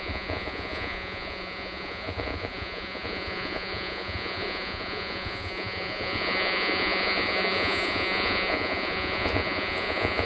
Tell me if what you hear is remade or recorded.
remade